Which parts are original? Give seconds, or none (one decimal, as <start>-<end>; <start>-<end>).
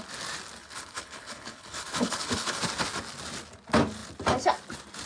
0.0-0.6; 2.6-5.1